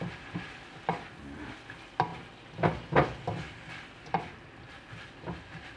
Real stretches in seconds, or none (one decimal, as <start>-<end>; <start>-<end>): 0.0-5.8